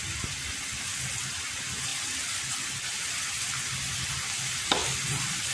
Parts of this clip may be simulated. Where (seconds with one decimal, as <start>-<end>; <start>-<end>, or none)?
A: 1.9-4.1; 4.8-5.5